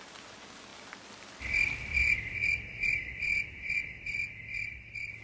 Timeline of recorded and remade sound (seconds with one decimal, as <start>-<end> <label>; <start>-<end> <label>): 0.0-5.2 recorded